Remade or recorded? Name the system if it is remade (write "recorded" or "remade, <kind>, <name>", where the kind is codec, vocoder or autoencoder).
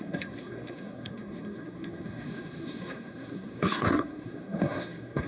remade, codec, SNAC